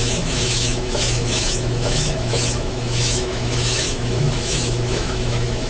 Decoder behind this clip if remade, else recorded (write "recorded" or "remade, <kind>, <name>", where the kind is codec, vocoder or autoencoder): remade, autoencoder, DAC-VAE